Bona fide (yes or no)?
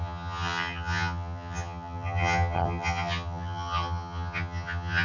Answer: no